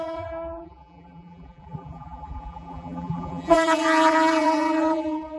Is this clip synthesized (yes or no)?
yes